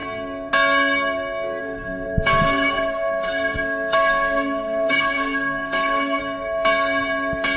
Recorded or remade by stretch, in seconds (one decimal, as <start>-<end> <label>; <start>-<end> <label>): 0.0-1.6 recorded; 1.6-6.2 remade; 6.2-7.6 recorded

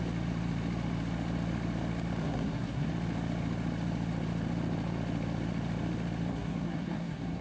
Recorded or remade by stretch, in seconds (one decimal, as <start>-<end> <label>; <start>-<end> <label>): 0.0-2.2 recorded; 2.2-2.9 remade; 2.9-6.3 recorded; 6.3-7.4 remade

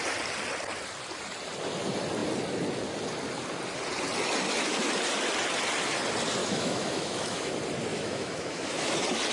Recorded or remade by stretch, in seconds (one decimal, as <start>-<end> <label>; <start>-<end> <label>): 0.0-6.4 recorded; 6.4-7.5 remade; 7.5-7.9 recorded; 7.9-8.9 remade; 8.9-9.3 recorded

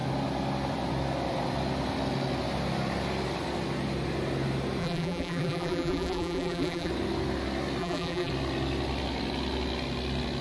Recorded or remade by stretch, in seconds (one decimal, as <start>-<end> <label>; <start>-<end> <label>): 0.0-4.8 recorded; 4.8-6.9 remade; 6.9-7.8 recorded; 7.8-8.3 remade; 8.3-10.4 recorded